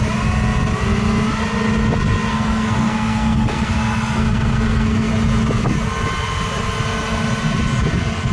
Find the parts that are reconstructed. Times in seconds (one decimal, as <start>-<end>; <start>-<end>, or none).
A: 2.3-5.1